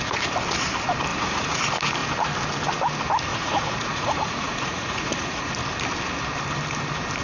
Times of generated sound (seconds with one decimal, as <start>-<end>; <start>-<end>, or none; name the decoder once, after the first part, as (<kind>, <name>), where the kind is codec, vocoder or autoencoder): 1.1-1.6 (vocoder, Vocos); 3.3-5.5